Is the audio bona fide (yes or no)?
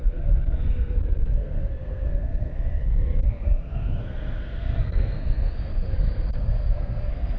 no